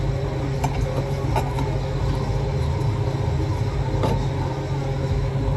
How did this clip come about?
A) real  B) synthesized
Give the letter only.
A